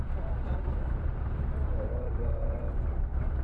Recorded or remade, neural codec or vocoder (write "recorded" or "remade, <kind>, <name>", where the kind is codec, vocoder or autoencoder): remade, vocoder, BigVGAN v2